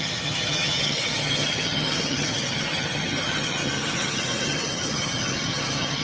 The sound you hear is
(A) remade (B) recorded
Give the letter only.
A